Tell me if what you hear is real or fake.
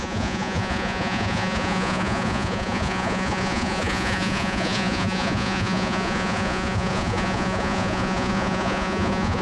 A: fake